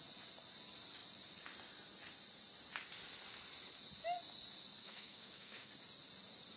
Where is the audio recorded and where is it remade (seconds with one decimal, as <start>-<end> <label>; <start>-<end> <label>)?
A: 0.0-4.8 recorded; 4.8-5.7 remade; 5.7-6.6 recorded